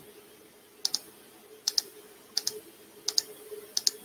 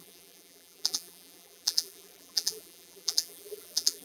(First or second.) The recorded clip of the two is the first